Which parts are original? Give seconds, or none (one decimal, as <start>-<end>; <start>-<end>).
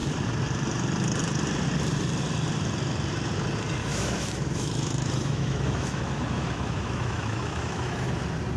0.0-3.8; 8.1-8.6